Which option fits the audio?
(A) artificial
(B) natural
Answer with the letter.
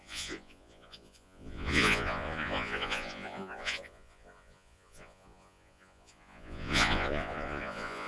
A